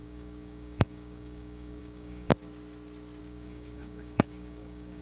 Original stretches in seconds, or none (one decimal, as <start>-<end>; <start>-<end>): 2.3-3.2